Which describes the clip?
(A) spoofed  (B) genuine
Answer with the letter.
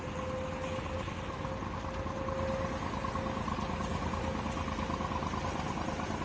B